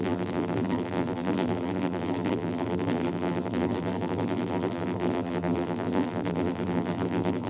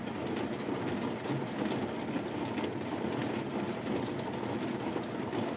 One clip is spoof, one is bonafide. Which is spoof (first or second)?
first